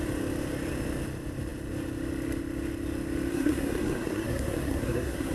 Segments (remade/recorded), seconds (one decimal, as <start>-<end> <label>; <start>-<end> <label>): 0.0-3.3 recorded; 3.3-5.3 remade